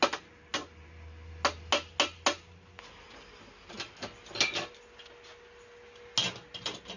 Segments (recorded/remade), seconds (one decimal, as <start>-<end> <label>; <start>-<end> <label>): 0.0-7.0 recorded